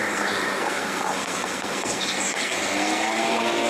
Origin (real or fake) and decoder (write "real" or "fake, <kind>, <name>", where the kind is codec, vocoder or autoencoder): fake, codec, SNAC